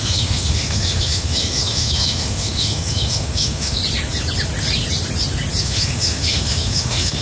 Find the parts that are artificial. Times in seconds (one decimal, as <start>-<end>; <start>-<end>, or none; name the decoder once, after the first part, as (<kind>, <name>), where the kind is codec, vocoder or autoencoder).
0.0-3.8 (autoencoder, DAC-VAE); 5.6-7.2

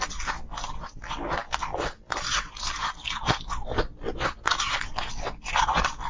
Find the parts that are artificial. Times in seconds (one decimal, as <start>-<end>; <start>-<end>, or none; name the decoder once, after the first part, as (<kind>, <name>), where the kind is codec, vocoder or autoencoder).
none

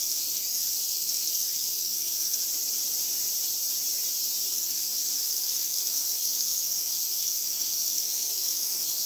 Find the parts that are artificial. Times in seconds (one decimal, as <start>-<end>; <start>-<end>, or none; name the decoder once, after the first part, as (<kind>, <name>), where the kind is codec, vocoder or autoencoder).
0.0-2.4 (codec, SNAC); 4.5-9.1

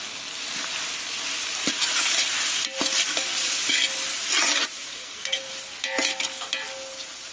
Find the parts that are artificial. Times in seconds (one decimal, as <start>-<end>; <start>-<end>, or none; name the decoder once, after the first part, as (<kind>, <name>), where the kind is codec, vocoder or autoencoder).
5.0-5.5 (codec, SNAC)

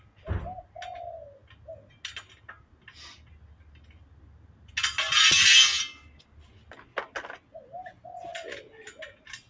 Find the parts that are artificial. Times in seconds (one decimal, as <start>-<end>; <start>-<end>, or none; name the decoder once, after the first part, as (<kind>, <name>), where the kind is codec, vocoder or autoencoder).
none